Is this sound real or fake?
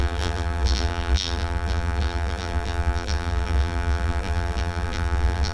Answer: fake